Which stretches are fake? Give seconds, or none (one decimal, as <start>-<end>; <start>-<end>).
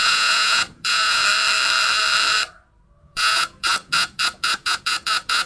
0.0-1.2; 3.0-5.5